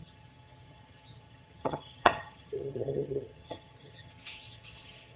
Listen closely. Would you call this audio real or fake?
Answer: fake